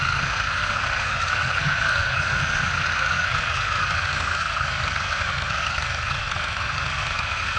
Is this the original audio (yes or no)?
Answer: no